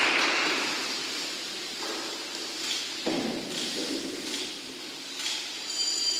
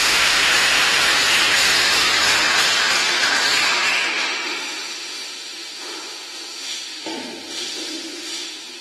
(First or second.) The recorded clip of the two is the first